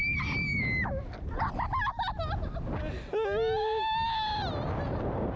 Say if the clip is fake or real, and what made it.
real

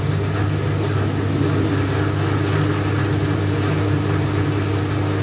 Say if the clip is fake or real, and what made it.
real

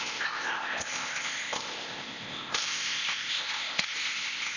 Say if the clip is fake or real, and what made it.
fake, codec, ZipCodec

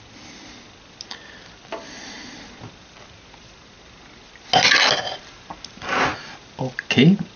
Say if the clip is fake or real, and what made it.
real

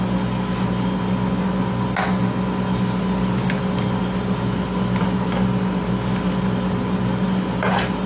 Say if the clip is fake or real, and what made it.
real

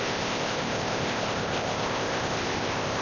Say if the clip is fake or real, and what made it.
fake, codec, ZipCodec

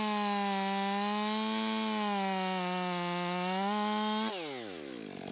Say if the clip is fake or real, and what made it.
real